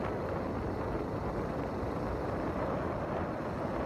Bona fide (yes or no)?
yes